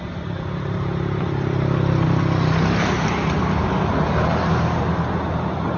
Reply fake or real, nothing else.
real